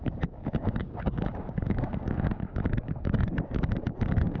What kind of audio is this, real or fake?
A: fake